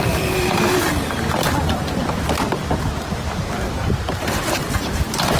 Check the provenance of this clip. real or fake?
fake